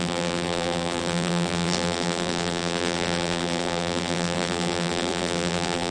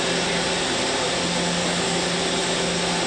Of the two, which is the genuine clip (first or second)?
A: second